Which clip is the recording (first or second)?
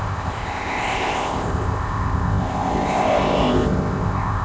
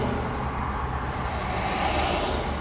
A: second